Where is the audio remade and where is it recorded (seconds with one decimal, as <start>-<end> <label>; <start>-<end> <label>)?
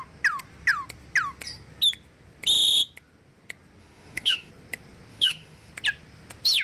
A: 0.0-3.8 recorded; 3.8-4.5 remade; 4.5-5.1 recorded; 5.1-5.7 remade; 5.7-6.6 recorded